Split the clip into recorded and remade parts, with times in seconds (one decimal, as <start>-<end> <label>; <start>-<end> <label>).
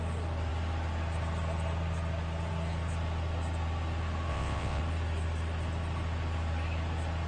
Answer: 0.0-4.3 recorded; 4.3-4.8 remade; 4.8-7.3 recorded